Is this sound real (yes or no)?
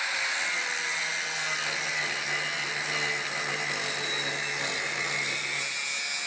yes